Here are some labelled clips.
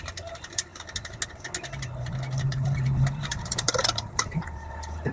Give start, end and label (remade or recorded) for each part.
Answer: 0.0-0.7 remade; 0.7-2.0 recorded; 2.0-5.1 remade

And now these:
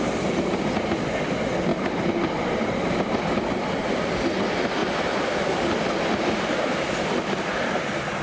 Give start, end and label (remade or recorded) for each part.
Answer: 0.0-1.7 recorded; 1.7-4.2 remade; 4.2-4.8 recorded; 4.8-7.5 remade; 7.5-8.2 recorded

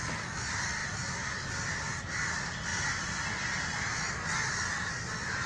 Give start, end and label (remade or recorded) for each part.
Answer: 0.0-5.5 recorded